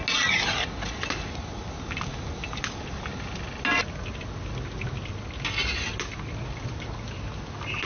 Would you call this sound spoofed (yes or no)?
no